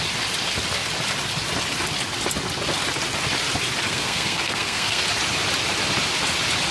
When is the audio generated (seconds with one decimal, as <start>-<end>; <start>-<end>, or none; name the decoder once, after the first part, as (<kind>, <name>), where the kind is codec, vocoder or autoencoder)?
3.8-5.0 (codec, SNAC)